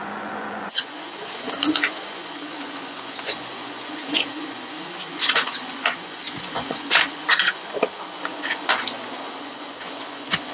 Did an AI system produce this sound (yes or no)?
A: yes